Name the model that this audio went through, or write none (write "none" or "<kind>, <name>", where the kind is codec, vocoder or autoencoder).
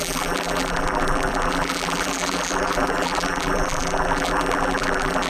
vocoder, BigVGAN v2